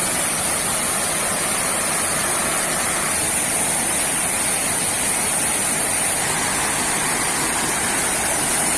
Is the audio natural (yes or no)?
yes